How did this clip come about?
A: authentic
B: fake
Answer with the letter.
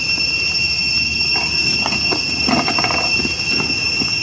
A